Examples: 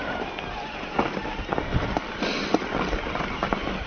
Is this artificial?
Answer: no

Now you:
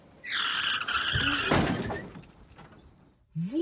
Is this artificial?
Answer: no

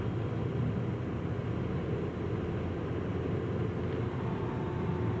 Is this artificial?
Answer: no